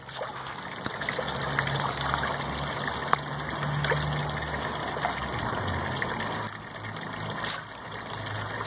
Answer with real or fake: real